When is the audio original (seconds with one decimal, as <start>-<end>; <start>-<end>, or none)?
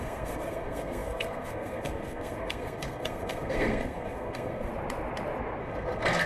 4.7-5.6